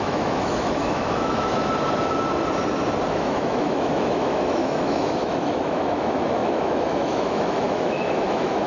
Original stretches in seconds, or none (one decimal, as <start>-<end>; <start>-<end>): 1.5-3.1